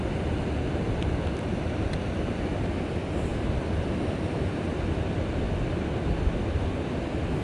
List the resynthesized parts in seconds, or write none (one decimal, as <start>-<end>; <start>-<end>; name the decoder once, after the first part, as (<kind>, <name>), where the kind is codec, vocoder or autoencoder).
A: none